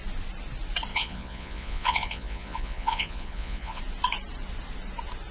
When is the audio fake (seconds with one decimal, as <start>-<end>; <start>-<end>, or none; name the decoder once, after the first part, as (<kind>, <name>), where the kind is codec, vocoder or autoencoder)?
0.9-3.8 (vocoder, Vocos)